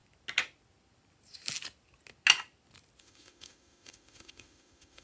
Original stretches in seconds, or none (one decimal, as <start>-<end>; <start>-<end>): 0.0-3.0